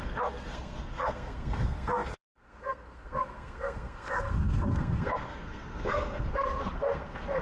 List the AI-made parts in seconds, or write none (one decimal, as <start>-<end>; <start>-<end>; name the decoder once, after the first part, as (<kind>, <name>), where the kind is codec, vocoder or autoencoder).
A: 0.0-7.4 (codec, SNAC)